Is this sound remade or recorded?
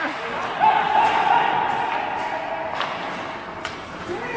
recorded